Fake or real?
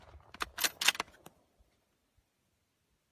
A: real